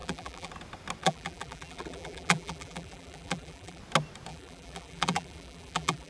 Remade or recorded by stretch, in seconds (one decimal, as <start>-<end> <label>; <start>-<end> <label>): 0.0-0.5 remade; 0.5-1.0 recorded; 1.0-3.8 remade; 3.8-4.3 recorded; 4.3-6.1 remade